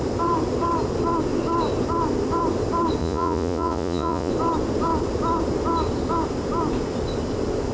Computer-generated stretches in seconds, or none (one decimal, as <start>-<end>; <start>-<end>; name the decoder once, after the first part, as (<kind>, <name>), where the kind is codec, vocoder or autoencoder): 3.0-4.3 (vocoder, Vocos)